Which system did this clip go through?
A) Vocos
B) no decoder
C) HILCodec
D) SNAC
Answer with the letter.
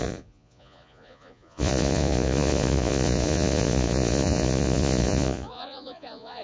A